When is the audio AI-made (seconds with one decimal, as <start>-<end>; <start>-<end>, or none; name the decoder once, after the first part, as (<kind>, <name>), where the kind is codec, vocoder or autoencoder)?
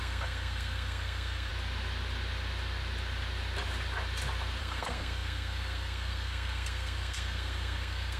0.0-1.5 (codec, SNAC); 4.6-8.2